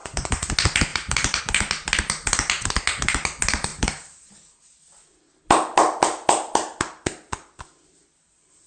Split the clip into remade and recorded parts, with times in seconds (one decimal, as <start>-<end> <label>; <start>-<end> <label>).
0.0-0.5 remade; 0.5-0.9 recorded; 0.9-1.4 remade; 1.4-3.7 recorded; 3.7-4.3 remade; 4.3-8.7 recorded